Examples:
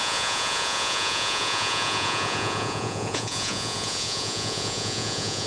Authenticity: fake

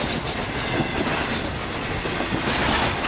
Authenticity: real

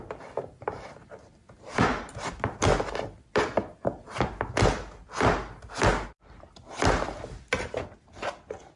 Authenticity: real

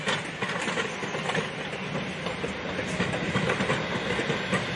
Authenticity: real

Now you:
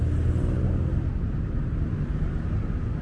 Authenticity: real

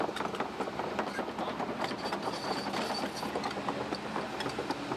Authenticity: real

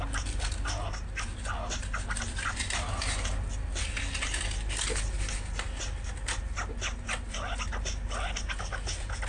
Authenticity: real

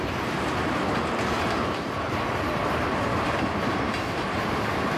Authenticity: real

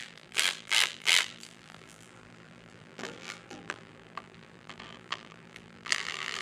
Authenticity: fake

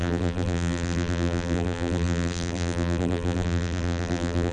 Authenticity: fake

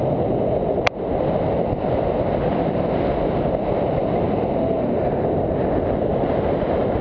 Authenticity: real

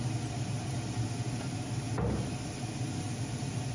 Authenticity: real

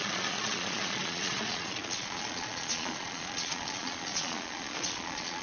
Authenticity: fake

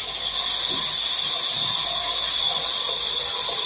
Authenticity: real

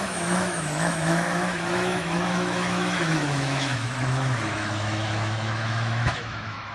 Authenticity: fake